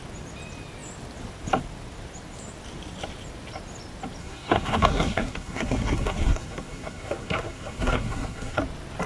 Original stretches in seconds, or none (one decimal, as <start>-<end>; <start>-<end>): 0.0-4.2; 8.6-9.1